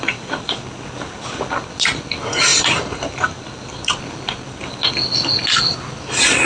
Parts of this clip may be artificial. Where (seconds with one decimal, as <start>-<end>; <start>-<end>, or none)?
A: 2.5-3.9